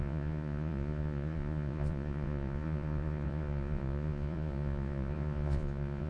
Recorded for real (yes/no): no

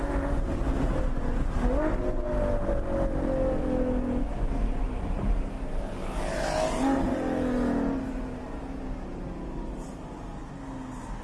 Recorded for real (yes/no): yes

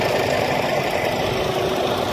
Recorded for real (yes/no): yes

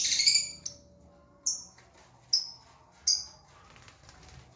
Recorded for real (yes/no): yes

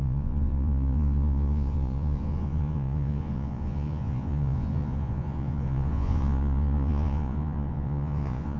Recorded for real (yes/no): no